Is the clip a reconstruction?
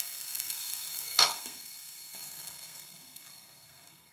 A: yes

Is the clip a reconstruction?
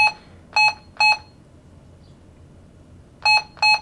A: no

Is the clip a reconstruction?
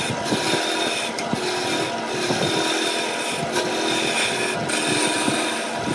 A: no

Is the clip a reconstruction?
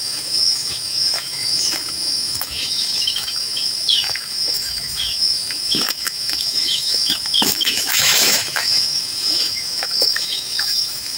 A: yes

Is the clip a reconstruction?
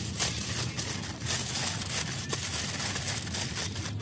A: no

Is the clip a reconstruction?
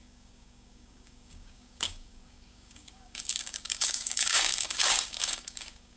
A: yes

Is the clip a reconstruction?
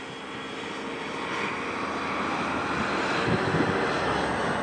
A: no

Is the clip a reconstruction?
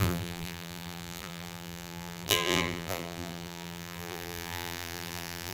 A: yes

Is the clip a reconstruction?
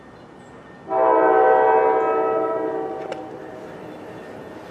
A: no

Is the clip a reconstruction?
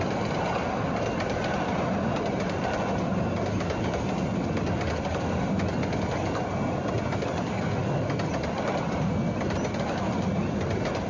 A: no